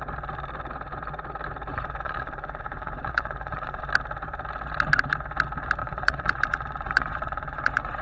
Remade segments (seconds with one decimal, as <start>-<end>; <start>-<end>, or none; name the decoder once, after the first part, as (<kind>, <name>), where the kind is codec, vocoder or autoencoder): 1.7-3.8 (vocoder, Vocos); 5.8-8.0